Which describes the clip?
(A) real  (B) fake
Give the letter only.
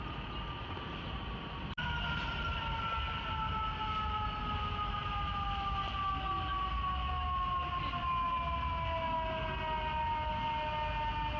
A